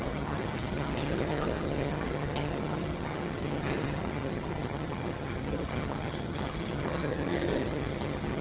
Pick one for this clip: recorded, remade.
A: remade